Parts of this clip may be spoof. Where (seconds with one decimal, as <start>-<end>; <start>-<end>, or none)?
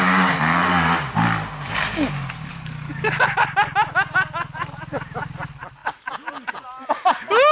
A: 2.5-3.2